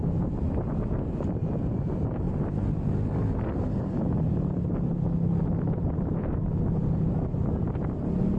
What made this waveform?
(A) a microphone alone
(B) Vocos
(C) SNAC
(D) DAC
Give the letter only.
A